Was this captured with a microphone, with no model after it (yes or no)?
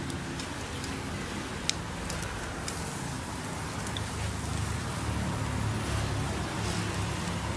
yes